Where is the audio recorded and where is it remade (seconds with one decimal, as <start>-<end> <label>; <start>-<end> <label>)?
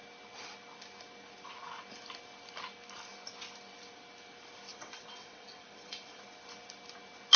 0.0-4.7 recorded; 4.7-6.2 remade; 6.2-7.4 recorded